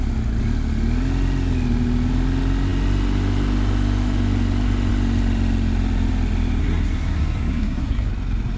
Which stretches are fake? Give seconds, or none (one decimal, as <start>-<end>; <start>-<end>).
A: 6.6-8.1